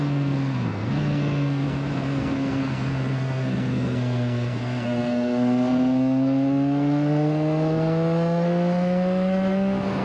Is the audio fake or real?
fake